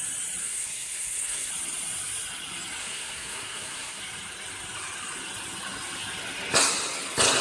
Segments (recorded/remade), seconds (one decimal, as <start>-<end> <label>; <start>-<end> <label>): 0.0-0.4 recorded; 0.4-1.5 remade; 1.5-2.8 recorded; 2.8-4.0 remade; 4.0-7.4 recorded